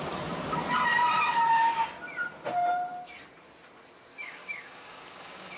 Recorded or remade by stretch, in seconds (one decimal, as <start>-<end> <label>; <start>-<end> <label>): 0.0-4.1 recorded; 4.1-5.6 remade